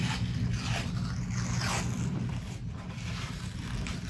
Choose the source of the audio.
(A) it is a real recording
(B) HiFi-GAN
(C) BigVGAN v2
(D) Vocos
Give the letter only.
A